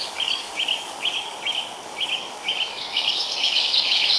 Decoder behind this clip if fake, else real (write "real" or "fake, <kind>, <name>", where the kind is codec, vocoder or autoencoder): fake, codec, DAC